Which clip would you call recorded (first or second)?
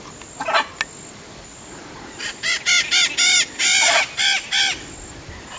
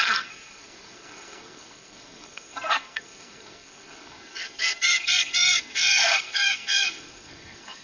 first